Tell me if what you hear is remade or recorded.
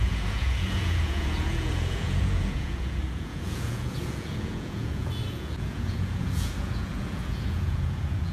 remade